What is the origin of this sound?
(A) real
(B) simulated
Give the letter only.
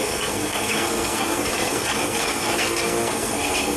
B